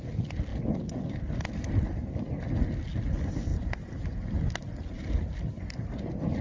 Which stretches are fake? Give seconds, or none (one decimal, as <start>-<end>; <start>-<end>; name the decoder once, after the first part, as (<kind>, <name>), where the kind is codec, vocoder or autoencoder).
none